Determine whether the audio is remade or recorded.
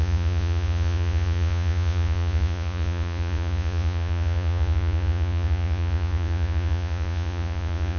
remade